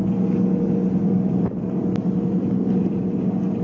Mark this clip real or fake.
real